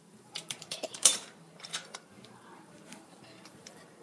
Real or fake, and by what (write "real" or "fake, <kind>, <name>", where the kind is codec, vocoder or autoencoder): fake, vocoder, BigVGAN v2